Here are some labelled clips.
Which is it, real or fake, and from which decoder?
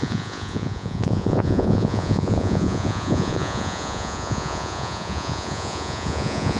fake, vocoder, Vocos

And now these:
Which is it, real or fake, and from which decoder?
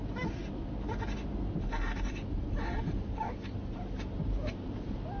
real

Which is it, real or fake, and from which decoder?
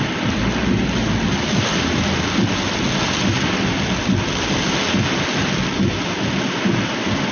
real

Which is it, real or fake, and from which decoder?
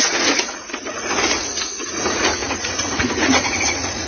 fake, vocoder, Vocos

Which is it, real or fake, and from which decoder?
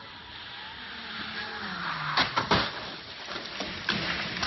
real